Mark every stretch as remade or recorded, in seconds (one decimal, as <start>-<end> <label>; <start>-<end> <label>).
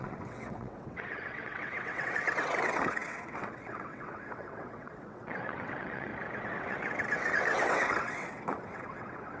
0.0-6.1 remade; 6.1-6.6 recorded; 6.6-9.4 remade